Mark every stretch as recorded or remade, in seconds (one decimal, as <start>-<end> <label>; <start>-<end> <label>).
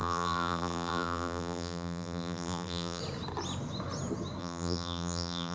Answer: 0.0-3.0 remade; 3.0-4.4 recorded; 4.4-5.5 remade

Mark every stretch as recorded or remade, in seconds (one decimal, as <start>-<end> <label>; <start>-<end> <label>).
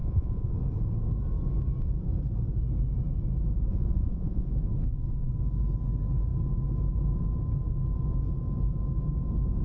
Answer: 0.0-0.5 remade; 0.5-3.7 recorded; 3.7-4.5 remade; 4.5-9.6 recorded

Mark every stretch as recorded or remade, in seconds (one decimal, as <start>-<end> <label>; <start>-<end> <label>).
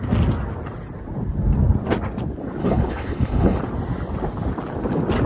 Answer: 0.0-2.6 recorded; 2.6-3.6 remade; 3.6-5.3 recorded